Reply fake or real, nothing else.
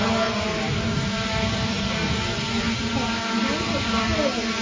real